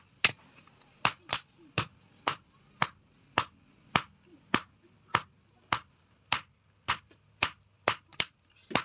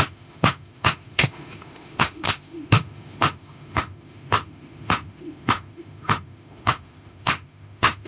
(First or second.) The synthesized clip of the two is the second